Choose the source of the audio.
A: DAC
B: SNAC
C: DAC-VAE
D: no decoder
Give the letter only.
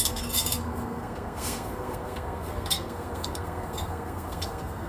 B